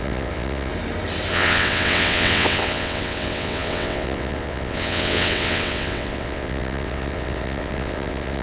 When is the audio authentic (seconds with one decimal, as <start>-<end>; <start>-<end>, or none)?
0.7-1.3